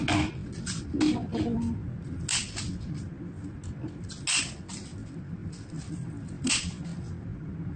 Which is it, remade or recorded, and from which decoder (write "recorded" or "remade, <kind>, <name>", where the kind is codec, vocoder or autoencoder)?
recorded